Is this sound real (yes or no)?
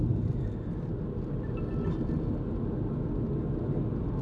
yes